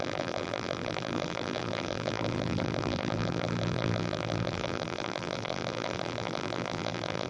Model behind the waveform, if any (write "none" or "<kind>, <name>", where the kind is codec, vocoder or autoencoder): vocoder, BigVGAN v2